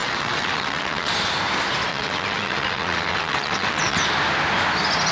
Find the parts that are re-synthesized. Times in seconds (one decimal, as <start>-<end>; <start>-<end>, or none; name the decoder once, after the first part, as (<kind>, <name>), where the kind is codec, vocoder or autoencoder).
0.0-1.1 (vocoder, WaveNeXt); 1.9-4.0